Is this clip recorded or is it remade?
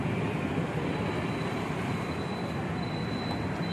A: recorded